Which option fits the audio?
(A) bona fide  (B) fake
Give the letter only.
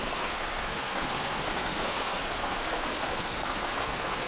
B